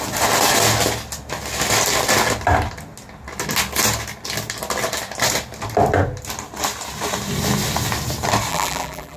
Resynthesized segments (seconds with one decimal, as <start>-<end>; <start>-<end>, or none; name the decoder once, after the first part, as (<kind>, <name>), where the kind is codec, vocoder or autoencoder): 8.5-9.2 (vocoder, BigVGAN v2)